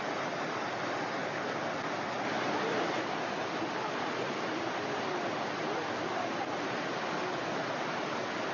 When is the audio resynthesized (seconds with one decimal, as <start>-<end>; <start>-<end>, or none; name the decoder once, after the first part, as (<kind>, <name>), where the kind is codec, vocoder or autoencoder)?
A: none